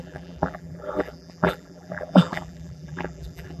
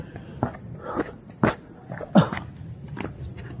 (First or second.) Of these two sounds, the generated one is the first